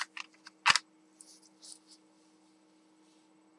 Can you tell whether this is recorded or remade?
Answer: recorded